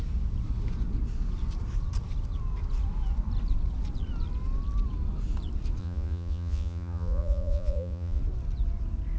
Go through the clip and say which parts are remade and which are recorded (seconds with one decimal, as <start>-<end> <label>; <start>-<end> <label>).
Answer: 0.0-5.8 recorded; 5.8-8.2 remade; 8.2-9.2 recorded